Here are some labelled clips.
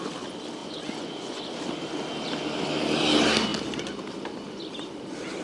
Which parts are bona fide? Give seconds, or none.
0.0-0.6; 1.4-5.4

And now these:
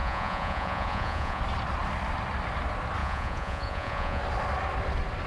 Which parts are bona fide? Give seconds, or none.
1.4-3.0; 4.2-5.3

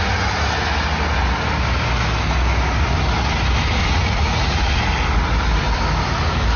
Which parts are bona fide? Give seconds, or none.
0.0-3.8; 4.8-6.6

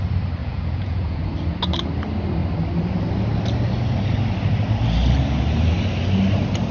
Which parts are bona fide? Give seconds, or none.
0.0-0.4; 1.3-6.7

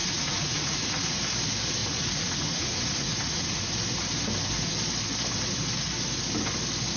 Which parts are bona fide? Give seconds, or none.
1.2-1.8; 3.7-7.0